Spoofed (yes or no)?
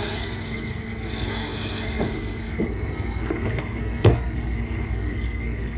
yes